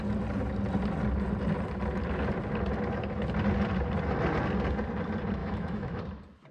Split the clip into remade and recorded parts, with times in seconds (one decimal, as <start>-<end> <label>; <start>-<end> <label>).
0.0-5.4 recorded; 5.4-6.0 remade; 6.0-6.5 recorded